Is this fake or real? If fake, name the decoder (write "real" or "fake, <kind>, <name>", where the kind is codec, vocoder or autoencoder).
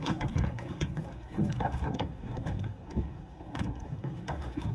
fake, codec, SNAC